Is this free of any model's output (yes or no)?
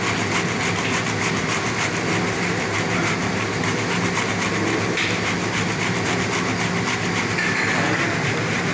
yes